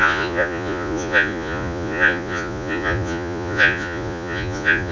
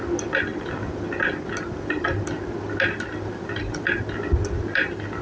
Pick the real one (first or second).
second